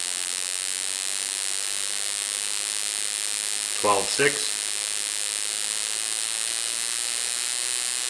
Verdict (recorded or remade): recorded